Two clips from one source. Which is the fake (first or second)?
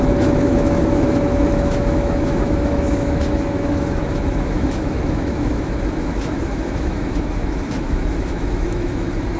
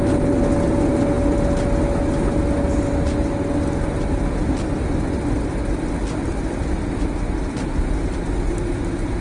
first